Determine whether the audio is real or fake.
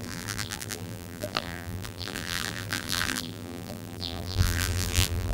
fake